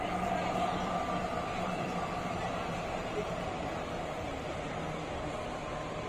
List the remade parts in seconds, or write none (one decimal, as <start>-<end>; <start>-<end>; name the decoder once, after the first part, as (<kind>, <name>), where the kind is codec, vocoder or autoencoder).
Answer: 1.3-5.0 (vocoder, BigVGAN v2)